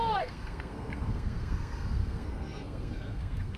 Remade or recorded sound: remade